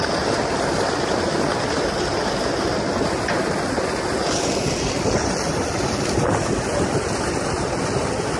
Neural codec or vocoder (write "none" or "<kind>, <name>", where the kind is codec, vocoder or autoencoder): none